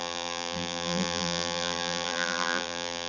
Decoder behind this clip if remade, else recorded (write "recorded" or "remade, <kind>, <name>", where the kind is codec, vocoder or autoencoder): remade, vocoder, BigVGAN v2